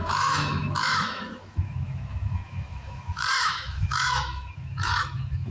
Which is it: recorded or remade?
remade